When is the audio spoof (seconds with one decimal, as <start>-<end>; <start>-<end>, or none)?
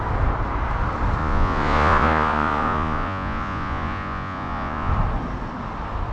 1.2-4.9